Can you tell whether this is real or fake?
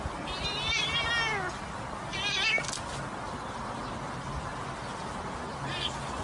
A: real